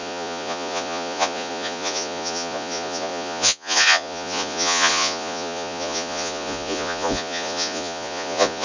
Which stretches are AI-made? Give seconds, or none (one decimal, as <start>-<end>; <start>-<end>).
0.0-8.6